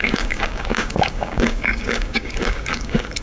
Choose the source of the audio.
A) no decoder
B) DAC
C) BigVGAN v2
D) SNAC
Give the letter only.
B